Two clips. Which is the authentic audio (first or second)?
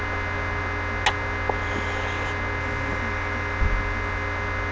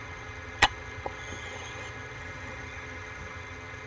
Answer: first